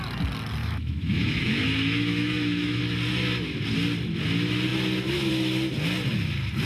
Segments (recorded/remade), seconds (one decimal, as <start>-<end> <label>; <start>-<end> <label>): 0.0-0.6 recorded; 0.6-2.8 remade; 2.8-6.7 recorded